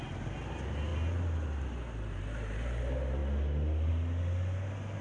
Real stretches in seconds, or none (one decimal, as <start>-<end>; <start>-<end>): 0.0-5.0